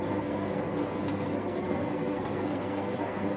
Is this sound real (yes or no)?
no